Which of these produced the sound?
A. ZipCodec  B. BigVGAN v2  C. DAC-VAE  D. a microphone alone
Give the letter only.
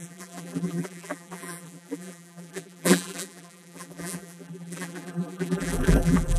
B